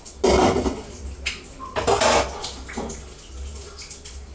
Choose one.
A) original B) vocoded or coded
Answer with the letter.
A